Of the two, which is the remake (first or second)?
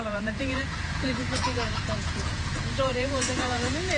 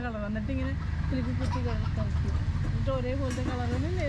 first